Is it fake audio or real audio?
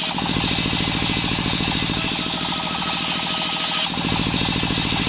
real